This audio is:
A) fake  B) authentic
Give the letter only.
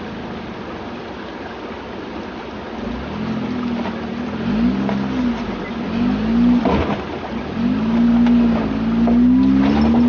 B